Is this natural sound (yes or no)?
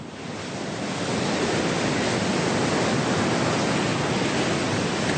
yes